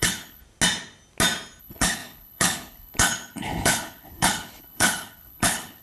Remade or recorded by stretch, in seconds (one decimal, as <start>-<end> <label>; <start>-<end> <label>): 0.0-0.4 remade; 0.4-1.6 recorded; 1.6-5.8 remade

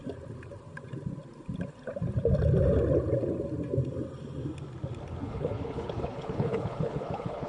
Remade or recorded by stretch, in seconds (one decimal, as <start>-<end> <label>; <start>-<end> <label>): 0.0-5.2 recorded; 5.2-7.5 remade